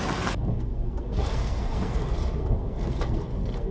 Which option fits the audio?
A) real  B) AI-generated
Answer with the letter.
B